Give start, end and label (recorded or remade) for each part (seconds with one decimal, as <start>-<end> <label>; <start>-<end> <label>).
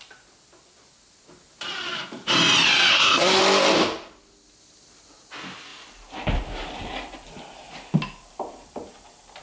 0.0-2.9 recorded; 2.9-3.4 remade; 3.4-9.4 recorded